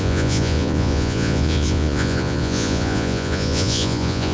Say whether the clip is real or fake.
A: fake